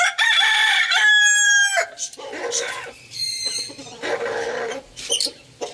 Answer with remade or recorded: remade